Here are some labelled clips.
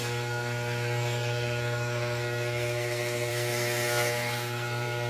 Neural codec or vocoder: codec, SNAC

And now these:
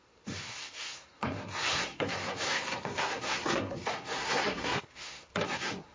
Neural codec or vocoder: codec, SNAC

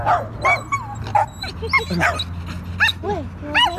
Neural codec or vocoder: none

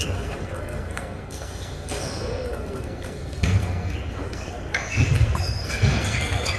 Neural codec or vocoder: codec, SNAC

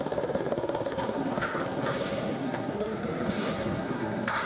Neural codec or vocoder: codec, SNAC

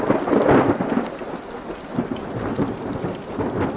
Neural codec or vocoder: none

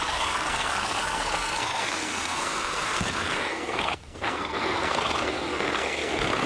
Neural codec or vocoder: codec, SNAC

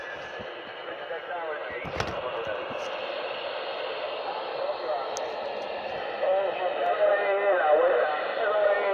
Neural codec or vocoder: none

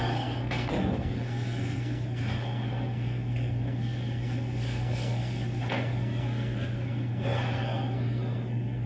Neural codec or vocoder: codec, SNAC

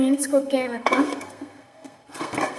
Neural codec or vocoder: codec, SNAC